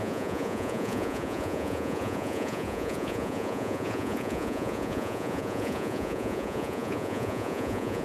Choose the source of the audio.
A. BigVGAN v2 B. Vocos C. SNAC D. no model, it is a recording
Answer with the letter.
B